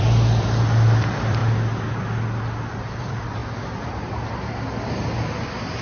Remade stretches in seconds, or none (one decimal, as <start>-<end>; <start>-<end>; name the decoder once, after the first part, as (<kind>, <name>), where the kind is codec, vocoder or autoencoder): 0.0-1.4 (vocoder, BigVGAN v2); 3.0-3.4